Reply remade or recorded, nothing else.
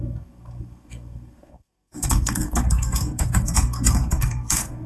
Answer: remade